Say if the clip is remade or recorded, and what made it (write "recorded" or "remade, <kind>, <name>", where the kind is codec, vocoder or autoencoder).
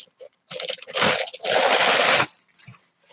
recorded